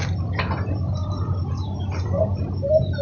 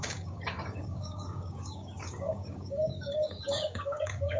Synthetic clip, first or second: second